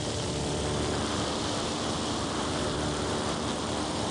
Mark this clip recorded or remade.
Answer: remade